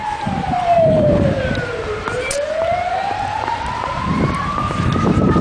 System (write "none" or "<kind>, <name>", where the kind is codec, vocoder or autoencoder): vocoder, BigVGAN v2